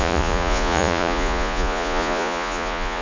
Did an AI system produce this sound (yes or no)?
yes